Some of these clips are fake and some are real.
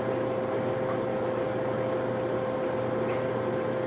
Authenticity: real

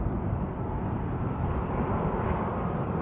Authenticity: real